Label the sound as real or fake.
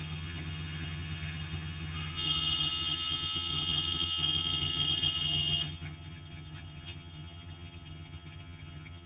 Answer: fake